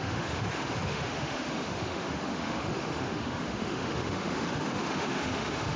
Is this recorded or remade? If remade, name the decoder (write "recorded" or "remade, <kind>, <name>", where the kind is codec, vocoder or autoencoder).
remade, autoencoder, DAC-VAE